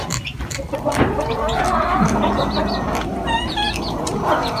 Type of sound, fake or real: fake